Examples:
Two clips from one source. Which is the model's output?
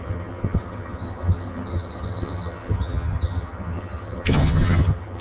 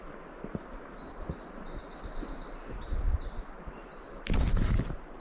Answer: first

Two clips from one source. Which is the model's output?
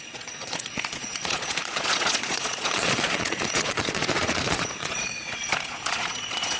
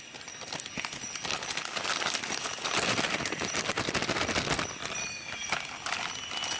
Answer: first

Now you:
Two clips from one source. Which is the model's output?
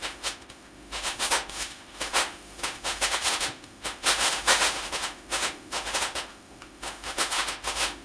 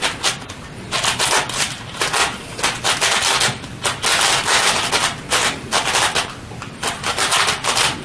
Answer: first